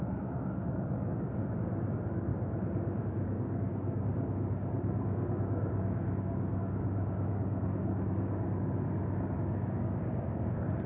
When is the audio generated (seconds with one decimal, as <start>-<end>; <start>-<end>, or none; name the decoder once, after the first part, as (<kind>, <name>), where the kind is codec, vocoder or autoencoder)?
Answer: 0.0-2.3 (codec, DAC); 3.0-10.9